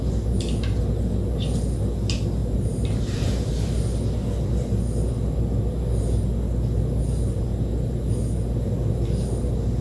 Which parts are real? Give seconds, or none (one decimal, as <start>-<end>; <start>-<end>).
0.0-2.4; 3.8-9.8